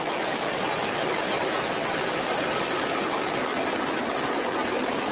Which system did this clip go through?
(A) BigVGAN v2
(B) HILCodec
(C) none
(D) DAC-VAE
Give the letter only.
C